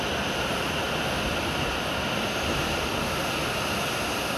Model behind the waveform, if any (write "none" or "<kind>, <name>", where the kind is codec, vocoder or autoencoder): none